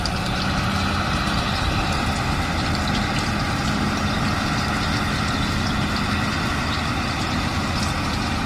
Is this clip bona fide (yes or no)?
yes